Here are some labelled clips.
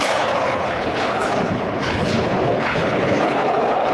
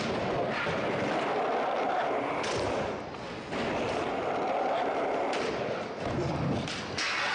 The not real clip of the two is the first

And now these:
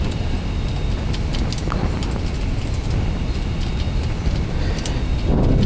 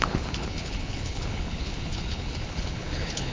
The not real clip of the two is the second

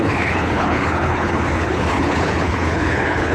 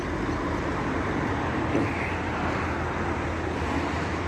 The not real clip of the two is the first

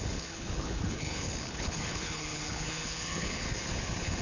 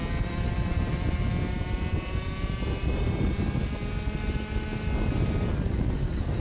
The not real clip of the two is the first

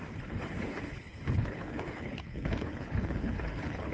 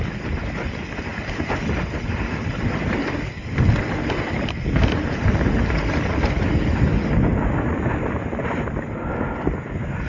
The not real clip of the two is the first